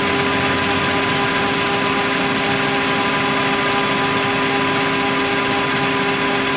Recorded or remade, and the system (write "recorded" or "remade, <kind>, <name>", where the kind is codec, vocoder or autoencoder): recorded